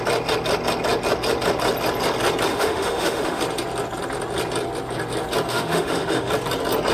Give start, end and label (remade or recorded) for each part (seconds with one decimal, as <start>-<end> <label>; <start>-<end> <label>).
0.0-2.5 recorded; 2.5-3.4 remade; 3.4-5.5 recorded; 5.5-6.3 remade; 6.3-6.9 recorded